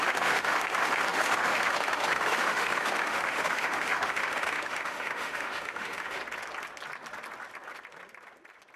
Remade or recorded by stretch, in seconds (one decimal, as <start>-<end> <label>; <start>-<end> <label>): 0.0-6.2 remade; 6.2-8.8 recorded